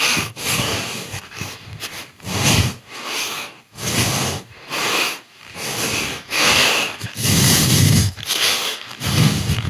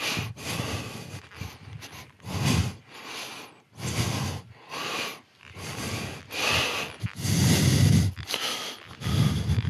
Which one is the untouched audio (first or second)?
second